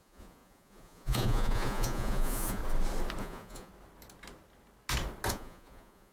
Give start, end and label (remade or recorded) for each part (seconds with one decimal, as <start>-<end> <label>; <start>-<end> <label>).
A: 0.0-2.6 remade; 2.6-3.2 recorded; 3.2-3.7 remade; 3.7-5.3 recorded; 5.3-6.1 remade